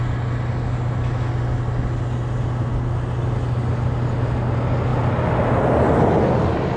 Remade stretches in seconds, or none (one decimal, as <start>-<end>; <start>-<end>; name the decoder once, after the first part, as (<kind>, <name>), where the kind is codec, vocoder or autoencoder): none